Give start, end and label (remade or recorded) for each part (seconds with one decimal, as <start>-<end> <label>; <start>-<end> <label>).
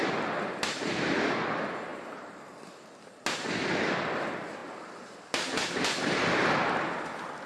0.0-7.5 recorded